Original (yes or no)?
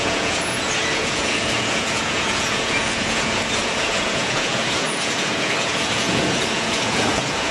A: no